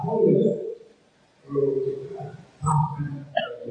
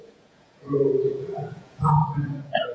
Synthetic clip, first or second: second